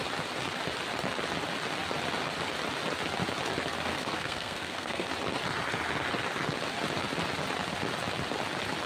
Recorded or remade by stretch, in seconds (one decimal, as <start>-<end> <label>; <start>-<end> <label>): 0.0-3.9 recorded; 3.9-5.1 remade; 5.1-8.9 recorded